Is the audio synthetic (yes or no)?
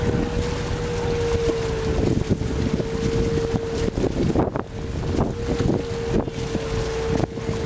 no